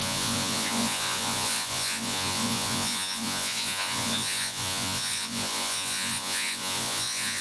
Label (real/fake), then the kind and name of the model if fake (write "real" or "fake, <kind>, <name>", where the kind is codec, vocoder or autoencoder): fake, vocoder, Vocos